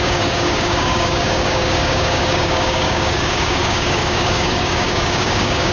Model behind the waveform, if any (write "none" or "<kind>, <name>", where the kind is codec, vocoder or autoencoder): codec, DAC